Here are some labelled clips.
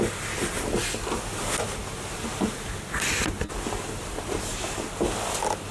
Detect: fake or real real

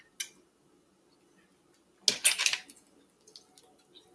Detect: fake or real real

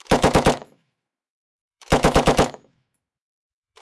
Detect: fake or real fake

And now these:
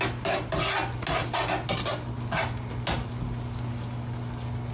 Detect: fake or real real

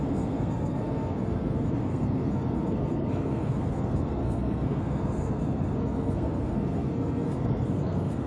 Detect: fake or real fake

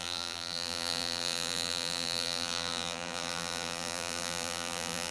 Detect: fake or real fake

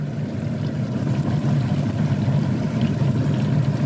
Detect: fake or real real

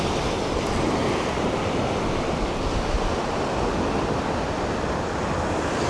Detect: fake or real real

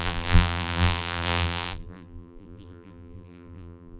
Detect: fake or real fake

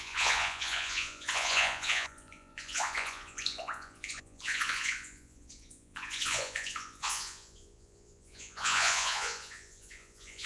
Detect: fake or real fake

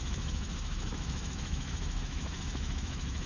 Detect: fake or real fake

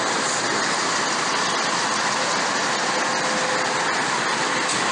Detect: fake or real real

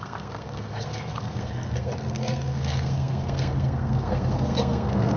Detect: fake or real fake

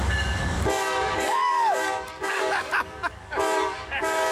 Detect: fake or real fake